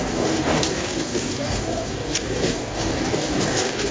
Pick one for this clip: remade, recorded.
remade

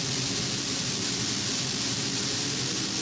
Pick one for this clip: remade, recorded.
recorded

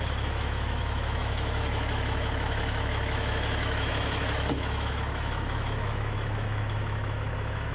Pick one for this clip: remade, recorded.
remade